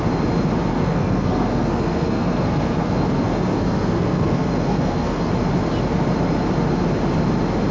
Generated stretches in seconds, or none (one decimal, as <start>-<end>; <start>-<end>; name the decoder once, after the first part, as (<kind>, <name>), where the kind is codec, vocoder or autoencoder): 0.7-5.3 (codec, SNAC)